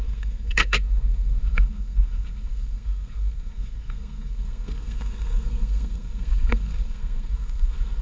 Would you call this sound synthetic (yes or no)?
yes